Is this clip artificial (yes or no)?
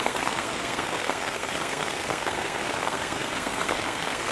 yes